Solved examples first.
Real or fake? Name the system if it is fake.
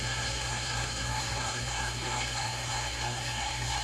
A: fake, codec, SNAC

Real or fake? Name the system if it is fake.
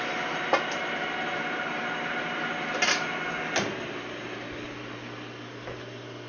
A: real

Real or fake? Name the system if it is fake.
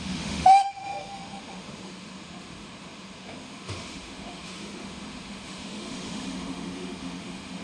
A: fake, autoencoder, DAC-VAE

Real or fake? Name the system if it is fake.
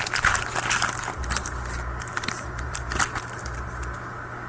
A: real